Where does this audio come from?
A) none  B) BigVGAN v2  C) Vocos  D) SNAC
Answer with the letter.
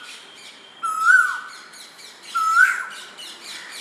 B